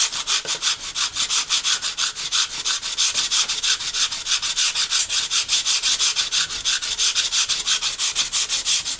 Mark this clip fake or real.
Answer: real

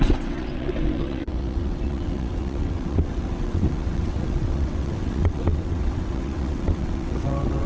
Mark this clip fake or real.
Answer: fake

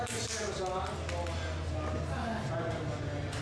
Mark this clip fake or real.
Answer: real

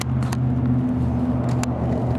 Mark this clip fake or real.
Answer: real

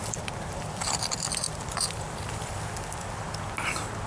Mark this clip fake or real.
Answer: fake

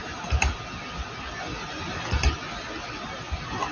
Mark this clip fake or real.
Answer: real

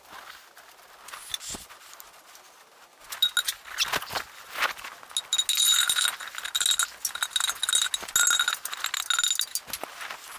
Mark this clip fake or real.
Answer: real